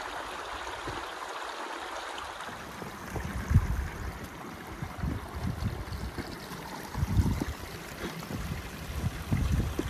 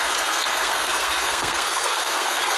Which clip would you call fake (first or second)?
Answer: second